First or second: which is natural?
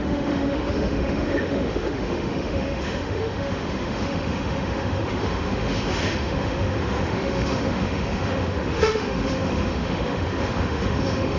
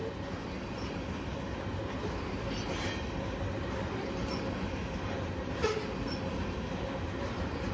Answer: second